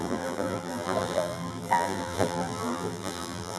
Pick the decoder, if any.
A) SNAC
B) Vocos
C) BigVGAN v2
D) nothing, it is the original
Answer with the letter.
C